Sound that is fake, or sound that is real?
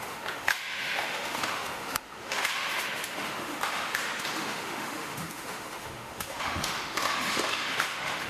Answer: fake